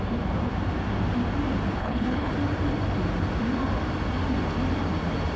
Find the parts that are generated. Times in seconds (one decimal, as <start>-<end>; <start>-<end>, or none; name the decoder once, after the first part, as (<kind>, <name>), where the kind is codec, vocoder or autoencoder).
1.8-2.3 (codec, HILCodec)